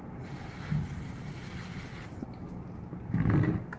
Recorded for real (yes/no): yes